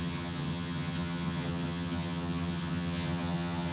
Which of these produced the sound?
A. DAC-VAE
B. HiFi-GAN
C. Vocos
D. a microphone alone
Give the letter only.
B